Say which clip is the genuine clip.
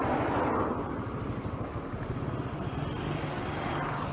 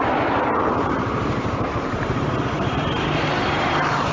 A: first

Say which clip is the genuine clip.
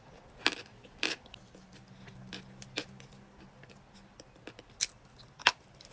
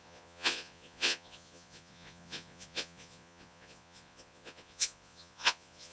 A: first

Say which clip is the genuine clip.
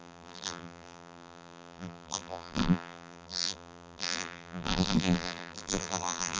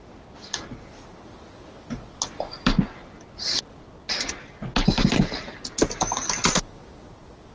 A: second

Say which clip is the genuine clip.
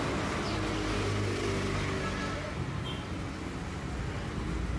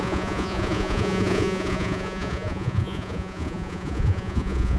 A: first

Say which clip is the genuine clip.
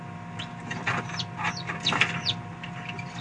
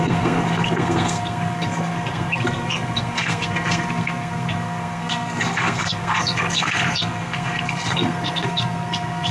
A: first